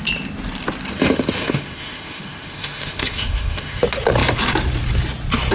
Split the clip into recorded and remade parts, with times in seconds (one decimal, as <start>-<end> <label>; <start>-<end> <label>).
0.0-1.4 recorded; 1.4-3.8 remade; 3.8-5.5 recorded